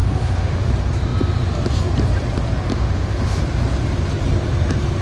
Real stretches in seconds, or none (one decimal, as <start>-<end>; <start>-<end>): 0.7-2.7; 3.4-5.0